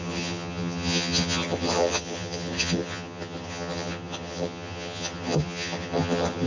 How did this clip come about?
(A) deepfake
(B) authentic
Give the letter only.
A